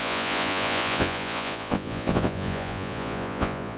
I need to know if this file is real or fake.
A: fake